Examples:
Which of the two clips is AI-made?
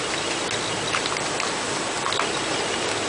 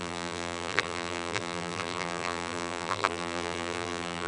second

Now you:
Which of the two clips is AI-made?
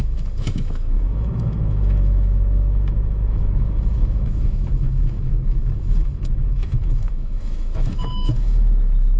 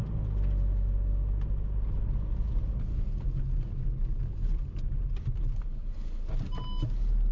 first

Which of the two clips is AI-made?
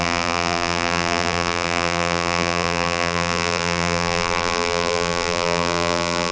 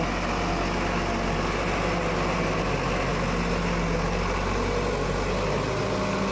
first